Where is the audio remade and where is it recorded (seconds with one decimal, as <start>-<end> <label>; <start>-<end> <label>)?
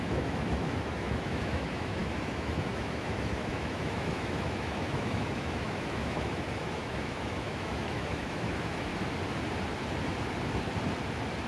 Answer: 0.0-8.9 remade; 8.9-11.5 recorded